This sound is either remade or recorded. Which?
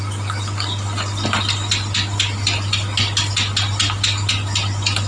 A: recorded